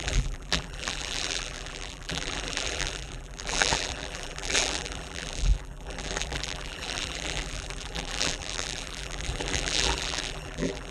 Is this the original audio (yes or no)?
no